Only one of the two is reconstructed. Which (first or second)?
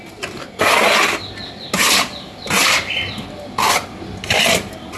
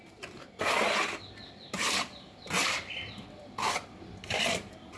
second